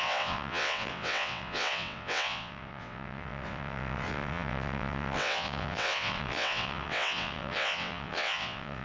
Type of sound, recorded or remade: remade